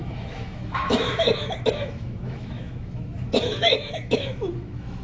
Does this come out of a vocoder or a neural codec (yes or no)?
yes